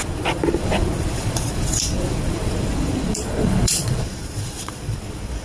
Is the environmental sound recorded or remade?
remade